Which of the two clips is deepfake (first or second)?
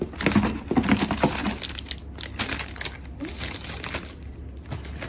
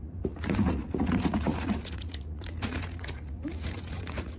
second